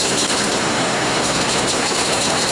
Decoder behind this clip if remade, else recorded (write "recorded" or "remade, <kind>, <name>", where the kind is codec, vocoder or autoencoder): remade, codec, SNAC